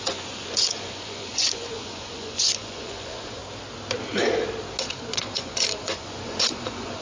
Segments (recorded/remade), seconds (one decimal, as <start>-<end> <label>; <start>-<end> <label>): 0.0-3.4 remade; 3.4-4.9 recorded; 4.9-7.0 remade